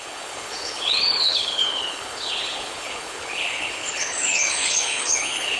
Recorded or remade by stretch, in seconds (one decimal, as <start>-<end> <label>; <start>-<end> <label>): 0.0-5.6 remade